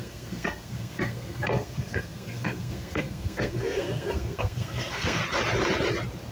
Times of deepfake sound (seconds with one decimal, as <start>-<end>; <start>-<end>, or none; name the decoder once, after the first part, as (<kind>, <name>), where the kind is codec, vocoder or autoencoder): 0.0-5.2 (codec, SNAC)